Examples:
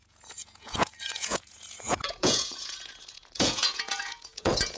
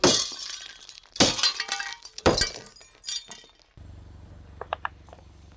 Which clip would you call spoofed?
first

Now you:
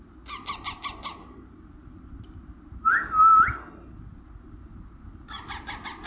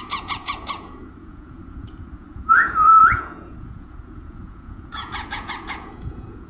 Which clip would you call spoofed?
second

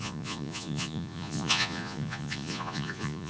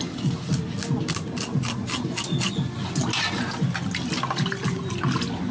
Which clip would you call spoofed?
first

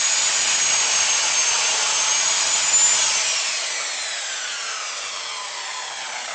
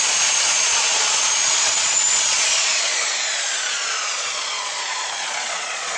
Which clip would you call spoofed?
second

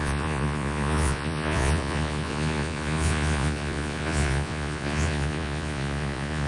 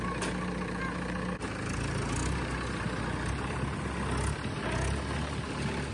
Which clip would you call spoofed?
first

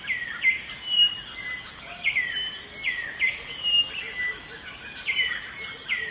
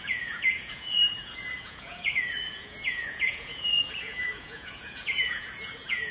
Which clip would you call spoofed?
second